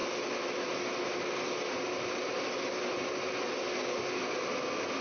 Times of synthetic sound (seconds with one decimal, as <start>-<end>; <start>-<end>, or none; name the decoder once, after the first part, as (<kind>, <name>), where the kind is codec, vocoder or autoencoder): none